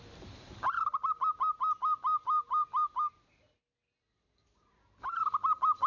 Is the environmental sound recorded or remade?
recorded